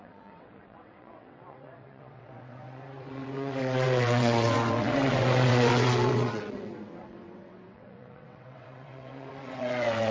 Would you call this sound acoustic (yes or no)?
no